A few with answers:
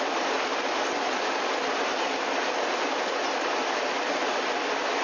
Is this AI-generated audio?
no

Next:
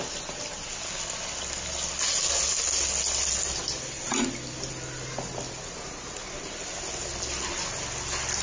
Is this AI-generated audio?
no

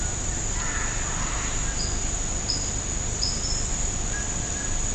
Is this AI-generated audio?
no